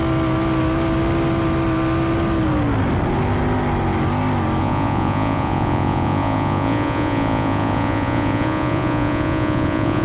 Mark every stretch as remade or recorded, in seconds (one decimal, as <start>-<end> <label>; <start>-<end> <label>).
0.0-4.6 recorded; 4.6-10.0 remade